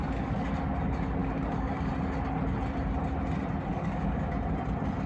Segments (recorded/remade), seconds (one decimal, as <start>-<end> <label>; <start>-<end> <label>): 0.0-0.7 remade; 0.7-1.2 recorded; 1.2-1.9 remade; 1.9-3.7 recorded; 3.7-4.3 remade; 4.3-5.1 recorded